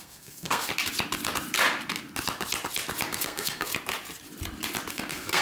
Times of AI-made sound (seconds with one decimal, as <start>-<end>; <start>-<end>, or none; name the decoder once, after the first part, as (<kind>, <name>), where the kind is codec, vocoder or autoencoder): 0.0-0.7 (codec, SNAC); 3.1-3.7; 4.9-5.4